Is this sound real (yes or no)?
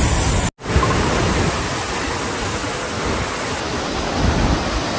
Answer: yes